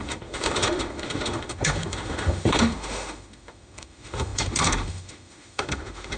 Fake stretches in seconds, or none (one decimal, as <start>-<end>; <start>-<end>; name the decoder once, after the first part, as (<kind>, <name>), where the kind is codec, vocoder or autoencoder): 0.0-6.2 (autoencoder, DAC-VAE)

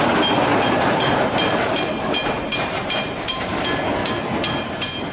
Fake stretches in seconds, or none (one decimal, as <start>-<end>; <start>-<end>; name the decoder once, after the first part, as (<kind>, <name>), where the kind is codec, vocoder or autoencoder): 0.5-3.6 (vocoder, BigVGAN v2); 4.0-5.1

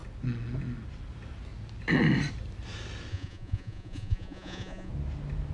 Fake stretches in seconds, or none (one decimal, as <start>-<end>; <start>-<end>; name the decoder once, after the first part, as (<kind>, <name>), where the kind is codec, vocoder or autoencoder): 3.1-4.9 (vocoder, Vocos)